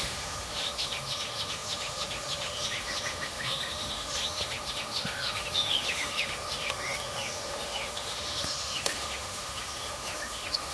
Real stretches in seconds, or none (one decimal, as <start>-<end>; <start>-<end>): none